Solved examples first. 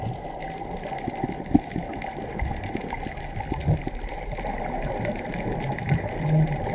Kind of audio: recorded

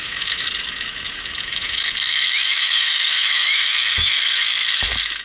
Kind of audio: remade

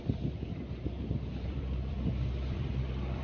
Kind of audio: remade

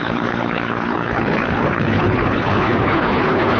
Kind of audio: remade